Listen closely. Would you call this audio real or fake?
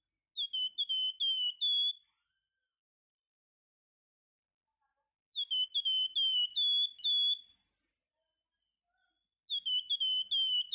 real